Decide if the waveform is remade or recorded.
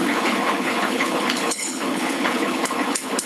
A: remade